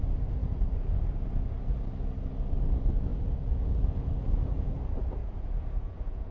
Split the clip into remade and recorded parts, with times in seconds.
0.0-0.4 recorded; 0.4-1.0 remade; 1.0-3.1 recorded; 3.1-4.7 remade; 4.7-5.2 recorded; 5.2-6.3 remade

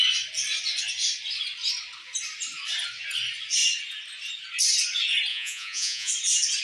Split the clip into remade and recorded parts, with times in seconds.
0.0-5.3 recorded; 5.3-6.1 remade; 6.1-6.6 recorded

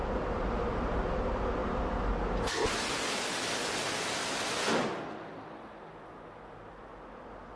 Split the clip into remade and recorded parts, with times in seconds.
0.0-7.6 recorded

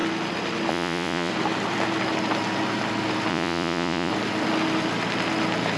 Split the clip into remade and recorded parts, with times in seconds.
0.0-0.7 recorded; 0.7-1.3 remade; 1.3-3.3 recorded; 3.3-4.1 remade; 4.1-5.8 recorded

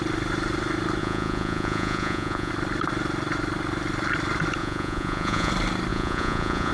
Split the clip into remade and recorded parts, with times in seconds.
0.0-1.0 recorded; 1.0-2.5 remade; 2.5-4.6 recorded; 4.6-5.5 remade; 5.5-5.9 recorded; 5.9-6.7 remade